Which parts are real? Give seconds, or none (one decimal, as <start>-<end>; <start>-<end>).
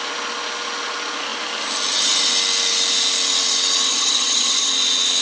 0.0-3.9; 4.7-5.2